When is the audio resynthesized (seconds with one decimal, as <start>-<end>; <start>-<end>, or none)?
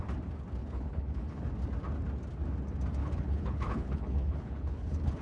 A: 0.6-1.5; 3.0-5.2